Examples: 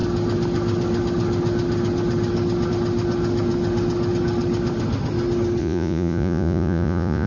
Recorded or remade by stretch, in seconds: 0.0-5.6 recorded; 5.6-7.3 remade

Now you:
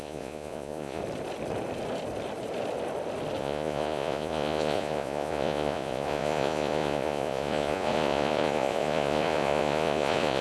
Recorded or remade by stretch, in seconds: 0.0-1.0 remade; 1.0-3.4 recorded; 3.4-10.4 remade

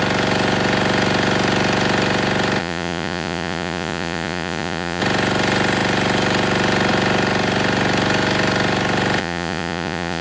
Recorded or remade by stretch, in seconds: 0.0-2.6 recorded; 2.6-5.0 remade; 5.0-9.2 recorded; 9.2-10.2 remade

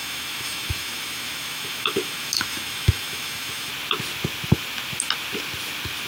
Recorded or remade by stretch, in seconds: 0.0-3.7 remade; 3.7-6.1 recorded

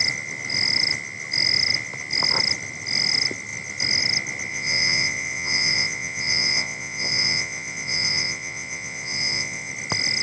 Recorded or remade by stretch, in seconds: 0.0-4.5 recorded; 4.5-9.7 remade; 9.7-10.2 recorded

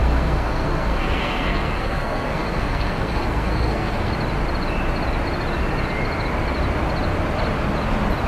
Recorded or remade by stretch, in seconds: 0.0-4.1 remade; 4.1-8.3 recorded